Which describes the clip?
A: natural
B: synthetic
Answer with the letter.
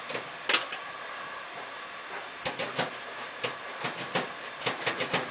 A